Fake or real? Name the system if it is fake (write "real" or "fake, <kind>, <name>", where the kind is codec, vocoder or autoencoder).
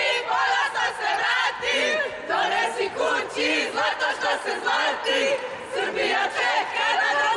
real